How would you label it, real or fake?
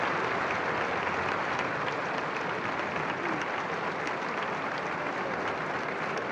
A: real